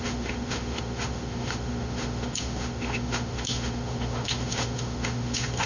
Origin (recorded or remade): remade